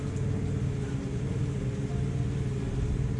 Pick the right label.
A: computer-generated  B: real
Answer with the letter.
B